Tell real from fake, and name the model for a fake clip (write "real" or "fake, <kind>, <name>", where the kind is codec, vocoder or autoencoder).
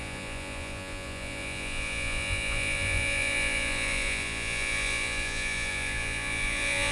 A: fake, vocoder, Vocos